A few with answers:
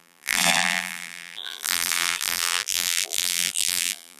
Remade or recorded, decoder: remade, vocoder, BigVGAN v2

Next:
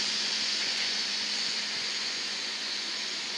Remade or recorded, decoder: remade, vocoder, Vocos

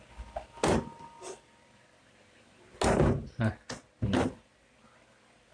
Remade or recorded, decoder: recorded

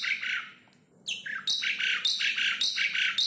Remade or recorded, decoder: recorded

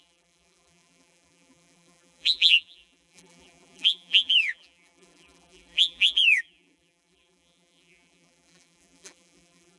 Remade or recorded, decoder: remade, vocoder, BigVGAN v2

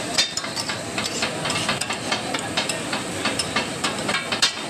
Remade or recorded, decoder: remade, vocoder, BigVGAN v2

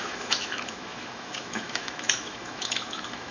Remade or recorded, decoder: remade, autoencoder, DAC-VAE